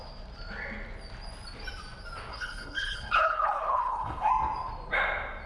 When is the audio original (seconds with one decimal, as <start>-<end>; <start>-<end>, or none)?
0.0-2.3; 4.3-5.5